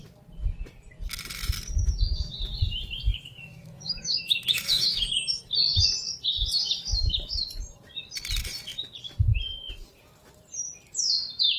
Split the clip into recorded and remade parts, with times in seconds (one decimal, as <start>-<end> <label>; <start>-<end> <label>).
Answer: 0.0-3.1 recorded; 3.1-5.4 remade; 5.4-11.6 recorded